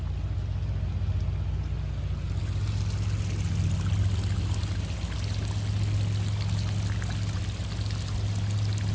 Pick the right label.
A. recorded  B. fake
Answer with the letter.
A